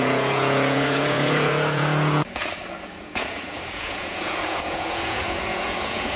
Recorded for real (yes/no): no